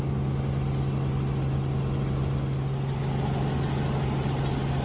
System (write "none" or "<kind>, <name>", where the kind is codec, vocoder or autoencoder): none